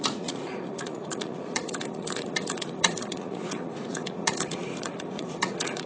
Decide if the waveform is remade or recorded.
remade